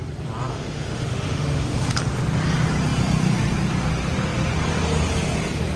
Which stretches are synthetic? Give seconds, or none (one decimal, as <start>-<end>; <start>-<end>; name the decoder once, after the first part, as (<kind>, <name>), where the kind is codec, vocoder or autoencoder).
0.5-1.9 (autoencoder, DAC-VAE)